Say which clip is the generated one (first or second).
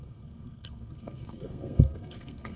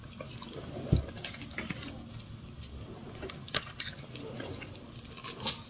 first